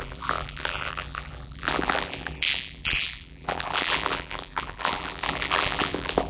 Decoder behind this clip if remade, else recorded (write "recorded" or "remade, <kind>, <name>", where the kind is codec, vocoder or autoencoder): remade, vocoder, BigVGAN v2